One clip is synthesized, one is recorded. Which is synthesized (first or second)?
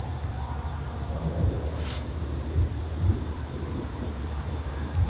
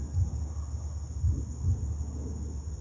first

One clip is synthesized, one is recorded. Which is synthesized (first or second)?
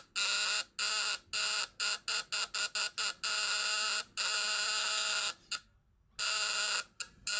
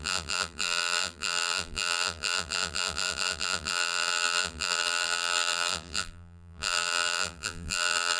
second